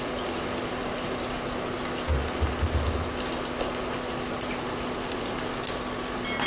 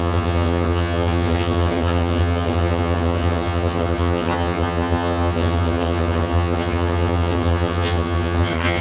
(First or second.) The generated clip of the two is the second